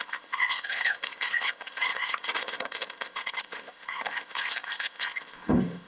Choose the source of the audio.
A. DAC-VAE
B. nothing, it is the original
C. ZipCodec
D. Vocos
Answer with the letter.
C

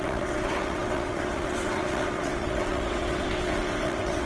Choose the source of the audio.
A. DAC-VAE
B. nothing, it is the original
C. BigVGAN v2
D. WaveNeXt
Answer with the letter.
D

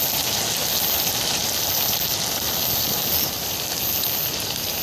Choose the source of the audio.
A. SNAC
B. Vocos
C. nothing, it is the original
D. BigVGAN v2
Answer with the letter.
C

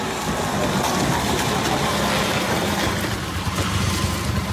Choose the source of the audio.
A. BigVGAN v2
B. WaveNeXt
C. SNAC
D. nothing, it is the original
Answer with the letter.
D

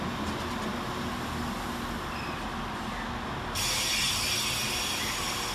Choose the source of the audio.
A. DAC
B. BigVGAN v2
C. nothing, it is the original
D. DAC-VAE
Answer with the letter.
C